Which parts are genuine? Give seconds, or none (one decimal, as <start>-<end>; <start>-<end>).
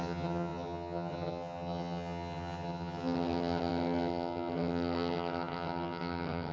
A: none